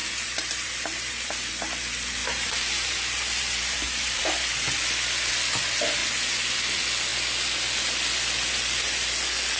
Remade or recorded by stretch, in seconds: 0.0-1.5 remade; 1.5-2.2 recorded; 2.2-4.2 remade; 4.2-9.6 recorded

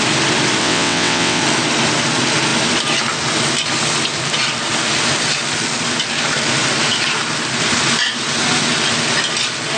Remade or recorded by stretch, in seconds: 0.0-0.6 recorded; 0.6-1.4 remade; 1.4-9.8 recorded

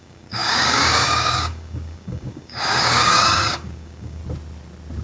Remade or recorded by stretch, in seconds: 0.0-4.2 remade; 4.2-5.0 recorded

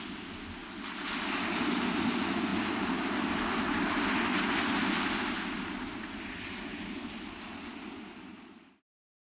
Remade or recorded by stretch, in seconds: 0.0-9.4 recorded

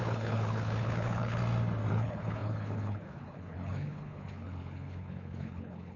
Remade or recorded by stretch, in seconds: 0.0-1.4 remade; 1.4-1.9 recorded; 1.9-6.0 remade

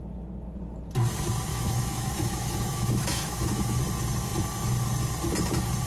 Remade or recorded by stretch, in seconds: 0.0-1.5 recorded; 1.5-3.8 remade; 3.8-5.9 recorded

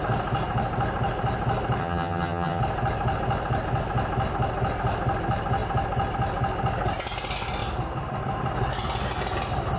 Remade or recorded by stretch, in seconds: 0.0-1.8 recorded; 1.8-2.6 remade; 2.6-9.8 recorded

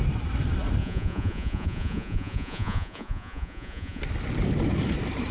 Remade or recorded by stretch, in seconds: 0.0-0.8 recorded; 0.8-4.0 remade; 4.0-5.3 recorded